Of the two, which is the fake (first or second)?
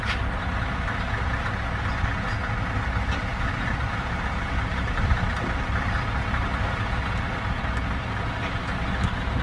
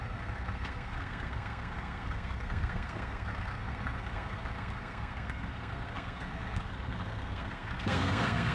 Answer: second